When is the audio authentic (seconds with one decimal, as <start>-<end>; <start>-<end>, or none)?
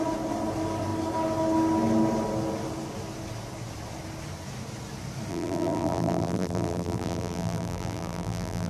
0.0-5.3